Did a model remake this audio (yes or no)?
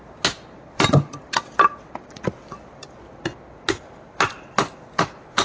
no